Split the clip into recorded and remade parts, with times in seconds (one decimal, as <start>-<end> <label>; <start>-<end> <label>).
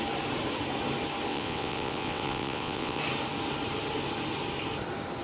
0.0-1.3 recorded; 1.3-3.0 remade; 3.0-5.2 recorded